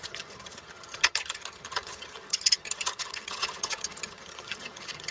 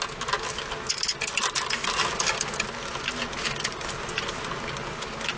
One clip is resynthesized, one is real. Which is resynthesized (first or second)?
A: first